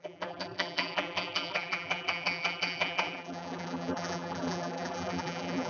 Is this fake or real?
fake